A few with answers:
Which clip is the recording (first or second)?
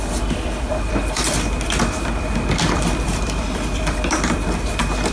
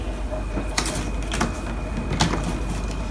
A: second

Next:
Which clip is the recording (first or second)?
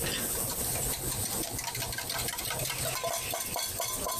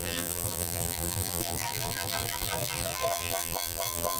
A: first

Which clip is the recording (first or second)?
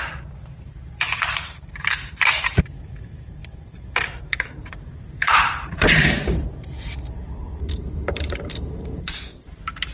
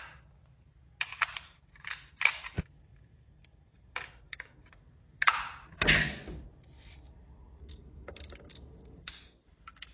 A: second